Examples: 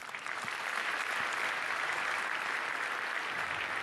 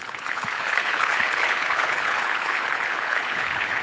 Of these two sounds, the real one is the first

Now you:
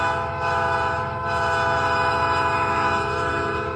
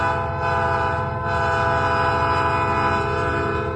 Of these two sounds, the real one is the second